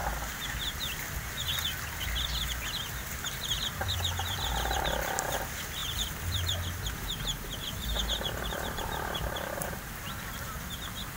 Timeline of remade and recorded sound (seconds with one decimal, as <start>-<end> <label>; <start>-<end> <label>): 0.0-11.2 remade